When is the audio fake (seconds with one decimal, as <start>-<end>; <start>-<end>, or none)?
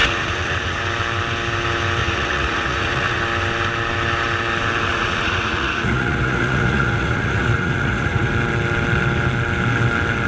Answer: 0.0-0.8; 2.0-3.2; 4.9-8.3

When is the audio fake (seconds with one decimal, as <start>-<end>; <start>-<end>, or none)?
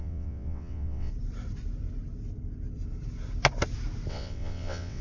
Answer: 0.0-1.1; 4.1-5.0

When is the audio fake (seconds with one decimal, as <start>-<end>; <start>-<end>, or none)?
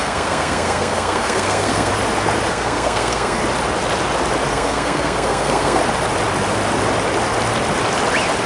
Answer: 0.0-1.9; 2.5-3.4; 4.5-5.8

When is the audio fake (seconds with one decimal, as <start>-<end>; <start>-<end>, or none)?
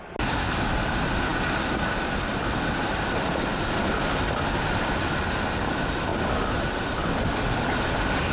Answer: none